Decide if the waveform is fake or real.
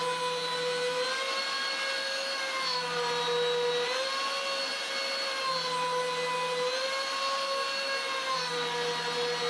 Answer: real